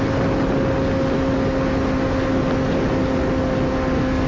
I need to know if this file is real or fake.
real